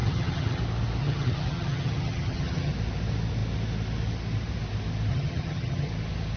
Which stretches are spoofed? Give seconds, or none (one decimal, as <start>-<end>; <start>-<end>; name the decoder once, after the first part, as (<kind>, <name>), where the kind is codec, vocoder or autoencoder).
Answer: 0.0-0.6 (vocoder, HiFi-GAN); 1.0-2.7; 5.1-5.9